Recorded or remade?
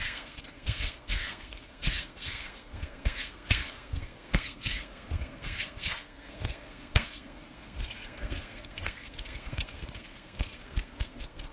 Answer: remade